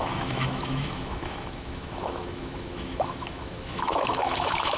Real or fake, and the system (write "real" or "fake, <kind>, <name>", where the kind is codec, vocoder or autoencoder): fake, autoencoder, DAC-VAE